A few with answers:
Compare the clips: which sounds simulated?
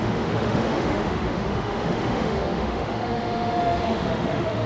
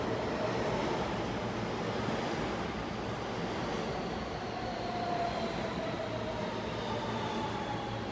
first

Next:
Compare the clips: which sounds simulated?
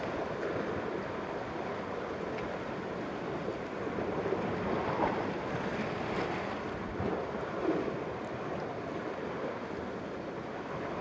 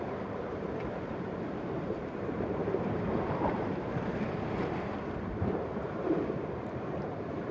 second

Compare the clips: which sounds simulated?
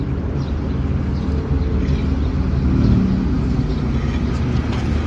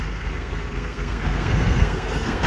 second